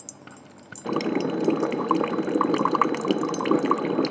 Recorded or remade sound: recorded